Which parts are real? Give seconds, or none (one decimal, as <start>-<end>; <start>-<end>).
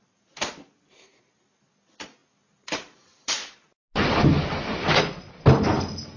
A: 0.0-6.2